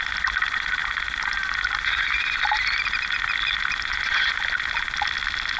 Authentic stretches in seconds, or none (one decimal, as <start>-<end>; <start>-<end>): 0.0-3.9; 4.4-5.6